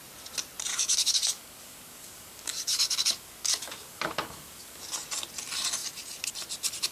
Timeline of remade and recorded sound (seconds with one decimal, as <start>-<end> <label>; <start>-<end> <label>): 0.0-0.7 recorded; 0.7-4.8 remade; 4.8-6.9 recorded